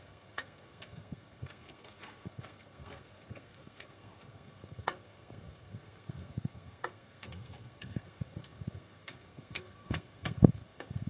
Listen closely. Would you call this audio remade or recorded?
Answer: remade